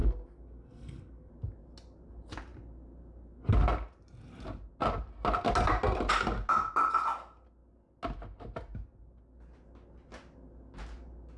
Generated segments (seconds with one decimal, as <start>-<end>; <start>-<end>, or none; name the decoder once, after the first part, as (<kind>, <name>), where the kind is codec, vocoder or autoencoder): 0.0-1.3 (codec, SNAC)